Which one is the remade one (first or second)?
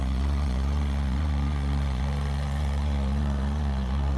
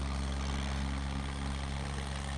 first